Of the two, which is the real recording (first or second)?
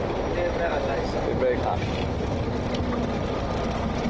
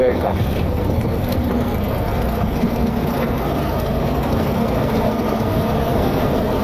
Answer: first